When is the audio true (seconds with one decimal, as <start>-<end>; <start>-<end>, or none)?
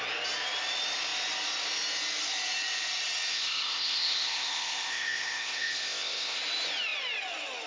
0.0-3.3; 6.4-7.7